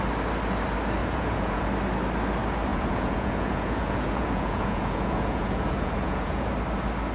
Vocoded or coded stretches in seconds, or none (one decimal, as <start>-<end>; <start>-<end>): 1.0-1.6; 2.7-6.5